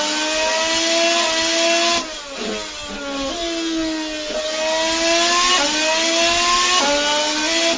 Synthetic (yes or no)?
no